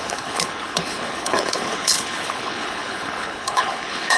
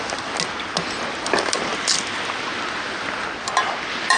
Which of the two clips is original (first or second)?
second